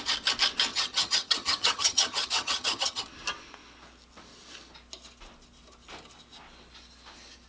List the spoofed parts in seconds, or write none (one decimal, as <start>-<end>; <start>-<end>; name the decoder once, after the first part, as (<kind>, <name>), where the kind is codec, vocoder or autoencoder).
0.7-3.0 (vocoder, HiFi-GAN)